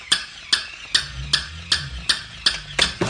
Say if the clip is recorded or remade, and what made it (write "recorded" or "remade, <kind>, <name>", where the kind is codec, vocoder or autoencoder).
recorded